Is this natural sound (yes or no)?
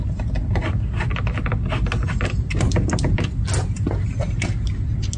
yes